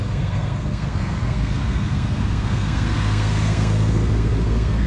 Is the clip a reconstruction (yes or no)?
yes